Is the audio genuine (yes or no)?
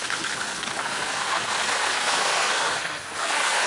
no